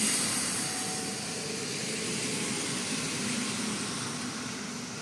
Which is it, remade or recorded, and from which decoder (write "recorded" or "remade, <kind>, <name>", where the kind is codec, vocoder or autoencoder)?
recorded